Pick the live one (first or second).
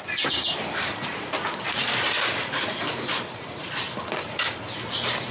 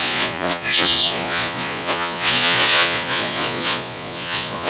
first